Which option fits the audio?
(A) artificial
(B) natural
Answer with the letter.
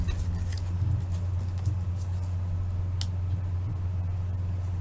B